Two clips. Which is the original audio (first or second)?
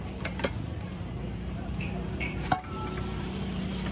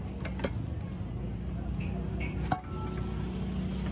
second